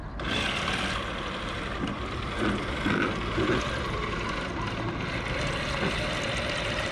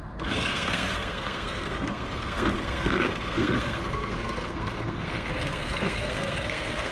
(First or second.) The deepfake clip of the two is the second